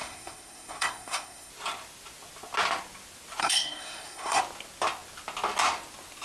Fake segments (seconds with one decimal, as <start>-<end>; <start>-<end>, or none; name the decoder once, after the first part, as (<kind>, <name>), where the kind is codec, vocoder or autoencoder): 0.0-1.5 (codec, SNAC); 3.4-4.4